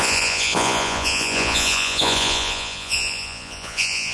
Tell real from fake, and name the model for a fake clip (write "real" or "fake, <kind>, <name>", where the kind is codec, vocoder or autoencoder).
fake, vocoder, Vocos